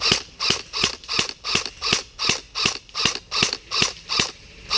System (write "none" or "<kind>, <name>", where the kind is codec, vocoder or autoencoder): none